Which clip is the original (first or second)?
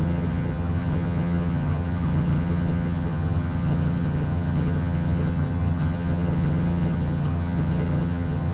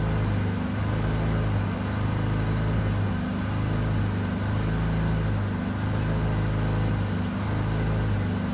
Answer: second